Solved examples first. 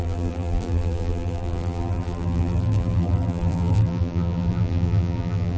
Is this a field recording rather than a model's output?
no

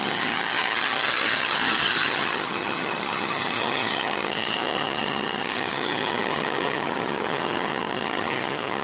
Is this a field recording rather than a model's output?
no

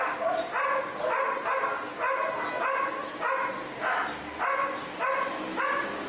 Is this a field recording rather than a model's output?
yes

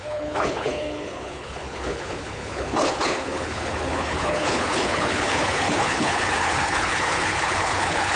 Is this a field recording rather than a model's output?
no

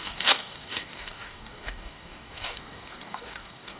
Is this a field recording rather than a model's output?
no